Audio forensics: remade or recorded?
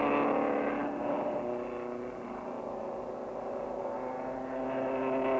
recorded